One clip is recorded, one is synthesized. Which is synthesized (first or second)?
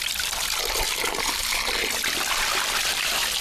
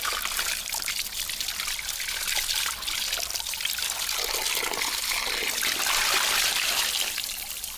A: first